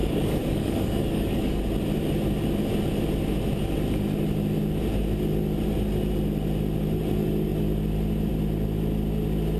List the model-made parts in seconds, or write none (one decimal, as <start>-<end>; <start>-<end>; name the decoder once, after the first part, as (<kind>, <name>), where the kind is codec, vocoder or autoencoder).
0.0-1.6 (codec, DAC)